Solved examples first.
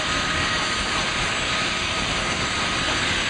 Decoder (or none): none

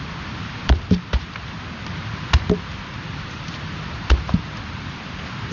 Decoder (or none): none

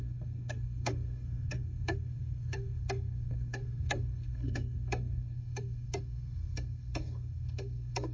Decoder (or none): codec, SNAC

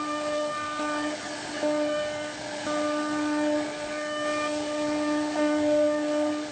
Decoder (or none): codec, DAC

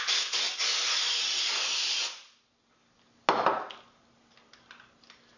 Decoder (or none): none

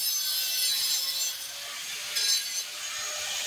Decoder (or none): none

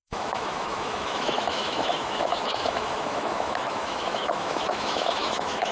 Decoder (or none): autoencoder, DAC-VAE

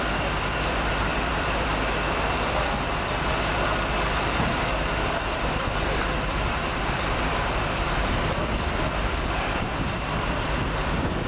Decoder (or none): vocoder, BigVGAN v2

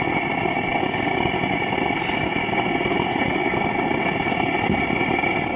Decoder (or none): none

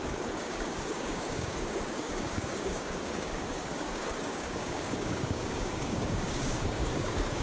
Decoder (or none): codec, DAC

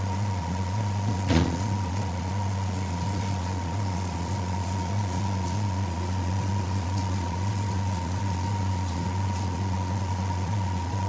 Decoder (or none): vocoder, Vocos